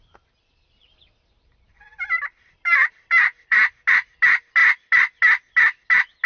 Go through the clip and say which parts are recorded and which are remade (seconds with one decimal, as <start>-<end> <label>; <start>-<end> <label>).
0.0-1.5 recorded; 1.5-3.6 remade; 3.6-6.3 recorded